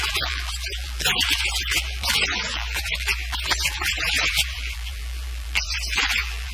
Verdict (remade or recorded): remade